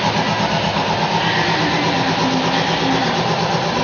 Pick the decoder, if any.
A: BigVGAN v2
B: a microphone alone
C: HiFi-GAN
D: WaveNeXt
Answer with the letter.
B